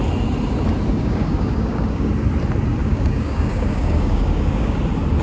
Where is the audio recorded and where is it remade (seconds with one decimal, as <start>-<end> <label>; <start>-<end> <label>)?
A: 0.0-0.9 recorded; 0.9-2.1 remade; 2.1-2.8 recorded; 2.8-4.8 remade; 4.8-5.2 recorded